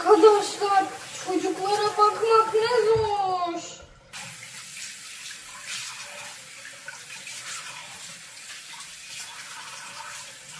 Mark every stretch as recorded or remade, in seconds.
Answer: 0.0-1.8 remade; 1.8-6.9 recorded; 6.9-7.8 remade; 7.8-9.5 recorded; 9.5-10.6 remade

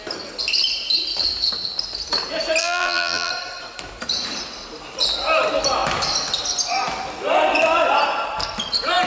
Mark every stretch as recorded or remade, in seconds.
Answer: 0.0-2.6 recorded; 2.6-3.3 remade; 3.3-9.1 recorded

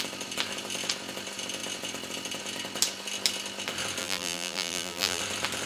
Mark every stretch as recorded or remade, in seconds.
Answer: 0.0-4.0 recorded; 4.0-5.2 remade; 5.2-5.7 recorded